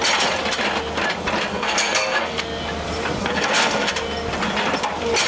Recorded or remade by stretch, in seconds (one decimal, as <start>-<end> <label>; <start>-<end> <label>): 0.0-1.5 recorded; 1.5-2.4 remade; 2.4-3.2 recorded; 3.2-3.9 remade; 3.9-5.3 recorded

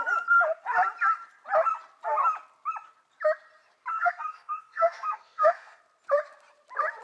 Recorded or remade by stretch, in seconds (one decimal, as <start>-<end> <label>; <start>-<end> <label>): 0.0-3.9 recorded; 3.9-5.8 remade; 5.8-7.0 recorded

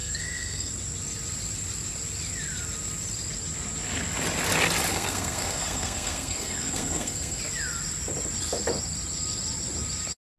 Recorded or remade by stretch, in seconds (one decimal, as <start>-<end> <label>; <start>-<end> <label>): 0.0-0.7 remade; 0.7-4.9 recorded; 4.9-7.4 remade; 7.4-10.4 recorded

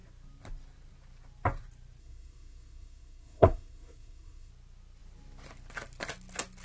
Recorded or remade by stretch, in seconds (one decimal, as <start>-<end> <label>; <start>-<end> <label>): 0.0-2.0 recorded; 2.0-4.5 remade; 4.5-6.6 recorded

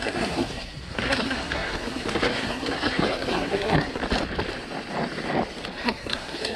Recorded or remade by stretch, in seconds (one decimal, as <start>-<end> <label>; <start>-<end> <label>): 0.0-4.0 remade; 4.0-5.7 recorded; 5.7-6.6 remade

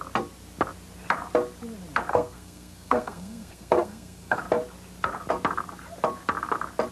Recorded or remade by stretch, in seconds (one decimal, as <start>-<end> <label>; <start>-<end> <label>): 0.0-2.1 recorded; 2.1-4.4 remade; 4.4-6.9 recorded

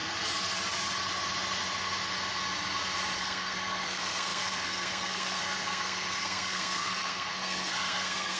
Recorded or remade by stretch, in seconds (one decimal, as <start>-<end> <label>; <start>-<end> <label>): 0.0-3.2 recorded; 3.2-8.4 remade

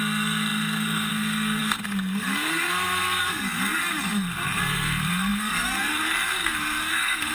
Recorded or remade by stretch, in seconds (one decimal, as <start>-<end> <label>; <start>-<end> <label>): 0.0-7.3 remade